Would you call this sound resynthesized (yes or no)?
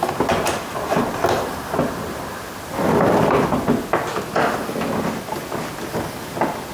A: no